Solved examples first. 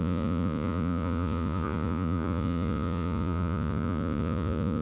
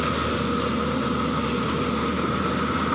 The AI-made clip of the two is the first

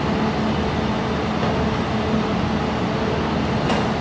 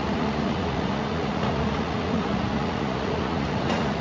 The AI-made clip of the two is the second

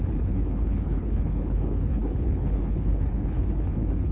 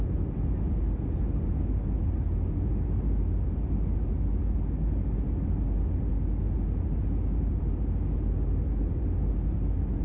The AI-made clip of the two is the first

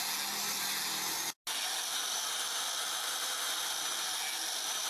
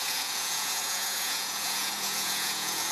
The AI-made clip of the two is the second